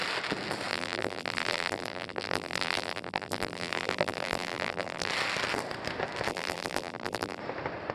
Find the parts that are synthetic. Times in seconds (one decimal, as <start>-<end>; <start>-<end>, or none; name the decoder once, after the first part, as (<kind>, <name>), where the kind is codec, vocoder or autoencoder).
0.7-5.1 (vocoder, BigVGAN v2); 6.3-7.4